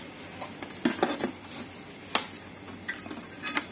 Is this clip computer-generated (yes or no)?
no